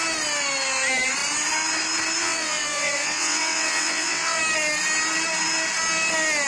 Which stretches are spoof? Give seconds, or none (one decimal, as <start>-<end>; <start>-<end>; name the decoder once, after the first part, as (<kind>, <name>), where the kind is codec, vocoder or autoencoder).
2.2-4.4 (vocoder, WaveNeXt)